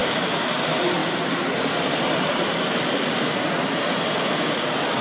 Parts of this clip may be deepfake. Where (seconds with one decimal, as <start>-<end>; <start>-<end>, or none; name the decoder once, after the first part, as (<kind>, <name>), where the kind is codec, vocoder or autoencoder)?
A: 0.0-0.5 (autoencoder, DAC-VAE)